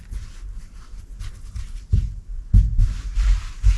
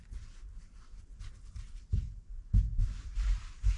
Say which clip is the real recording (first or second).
first